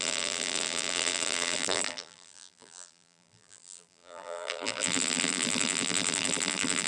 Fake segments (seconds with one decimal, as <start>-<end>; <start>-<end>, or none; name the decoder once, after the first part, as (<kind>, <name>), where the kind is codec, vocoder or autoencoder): 0.0-6.9 (vocoder, BigVGAN v2)